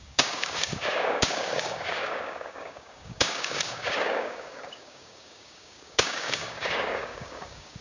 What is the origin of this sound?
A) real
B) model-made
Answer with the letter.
B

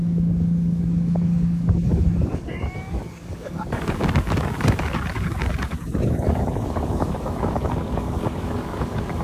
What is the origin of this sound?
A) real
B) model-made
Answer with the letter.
B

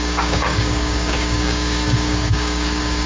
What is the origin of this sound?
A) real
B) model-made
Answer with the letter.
B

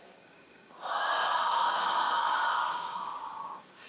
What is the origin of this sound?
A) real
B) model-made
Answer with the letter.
B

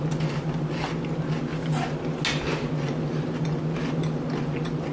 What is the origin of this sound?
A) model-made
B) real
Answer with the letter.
B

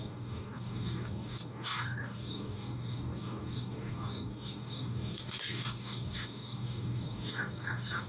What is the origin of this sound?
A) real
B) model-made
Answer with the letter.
B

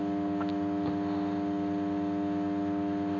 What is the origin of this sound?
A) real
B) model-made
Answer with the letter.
A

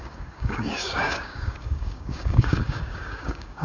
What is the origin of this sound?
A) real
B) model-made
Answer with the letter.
B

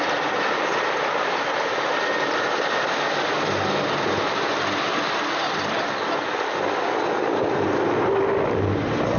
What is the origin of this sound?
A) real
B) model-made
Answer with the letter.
A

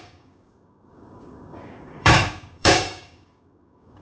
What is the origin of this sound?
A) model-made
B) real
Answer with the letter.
A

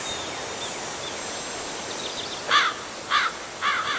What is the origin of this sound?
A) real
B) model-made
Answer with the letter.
A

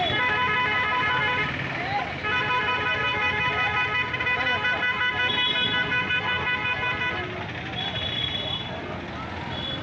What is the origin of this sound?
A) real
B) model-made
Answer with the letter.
A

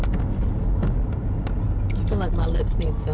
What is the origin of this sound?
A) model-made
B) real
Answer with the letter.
B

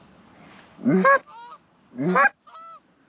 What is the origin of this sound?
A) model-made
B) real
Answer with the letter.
B